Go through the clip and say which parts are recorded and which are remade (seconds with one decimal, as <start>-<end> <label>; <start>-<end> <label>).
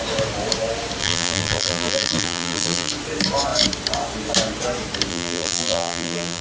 0.0-1.0 recorded; 1.0-2.9 remade; 2.9-5.1 recorded; 5.1-6.4 remade